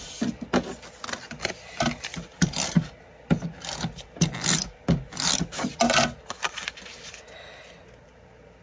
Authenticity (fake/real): real